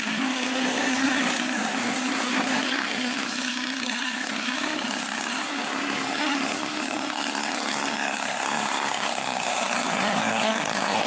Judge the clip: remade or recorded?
remade